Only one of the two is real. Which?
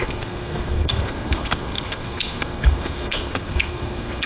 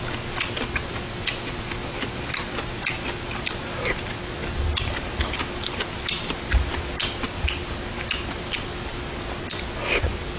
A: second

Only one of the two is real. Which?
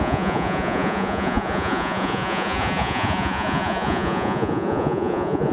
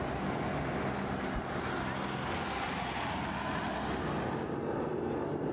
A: second